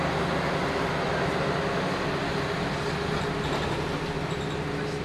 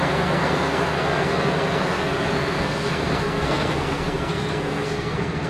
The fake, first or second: second